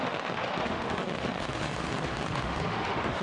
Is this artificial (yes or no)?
yes